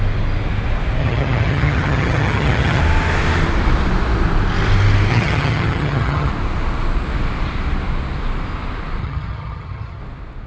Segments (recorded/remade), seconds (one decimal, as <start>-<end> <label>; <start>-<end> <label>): 0.0-1.0 recorded; 1.0-2.8 remade; 2.8-5.1 recorded; 5.1-6.3 remade; 6.3-9.0 recorded; 9.0-10.0 remade; 10.0-10.5 recorded